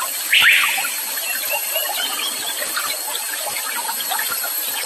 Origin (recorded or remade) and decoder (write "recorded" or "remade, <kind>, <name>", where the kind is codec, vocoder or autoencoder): recorded